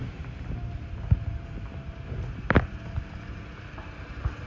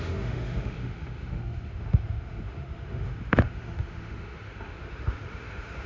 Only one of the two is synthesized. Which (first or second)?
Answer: second